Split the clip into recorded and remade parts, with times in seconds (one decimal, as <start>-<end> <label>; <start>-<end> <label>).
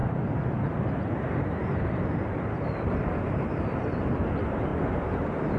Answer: 0.0-5.6 recorded